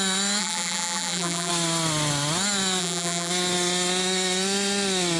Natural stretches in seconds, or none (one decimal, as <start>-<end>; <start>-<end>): 0.0-0.4; 1.5-2.8; 3.3-5.2